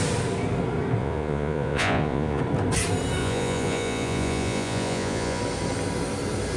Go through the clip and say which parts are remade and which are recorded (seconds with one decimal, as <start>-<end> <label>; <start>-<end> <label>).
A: 0.0-1.0 recorded; 1.0-2.4 remade; 2.4-3.2 recorded; 3.2-5.4 remade; 5.4-6.6 recorded